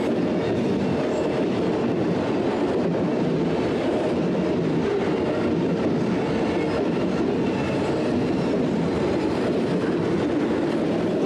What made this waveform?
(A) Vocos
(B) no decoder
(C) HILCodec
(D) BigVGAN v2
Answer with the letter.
B